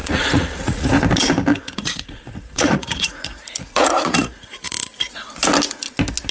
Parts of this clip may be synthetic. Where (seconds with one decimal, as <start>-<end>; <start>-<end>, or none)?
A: 0.0-0.9; 1.5-5.3